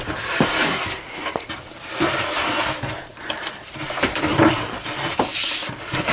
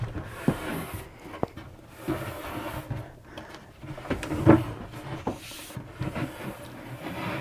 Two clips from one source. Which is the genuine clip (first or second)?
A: second